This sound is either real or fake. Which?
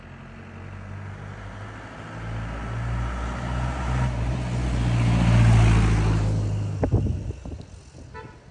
real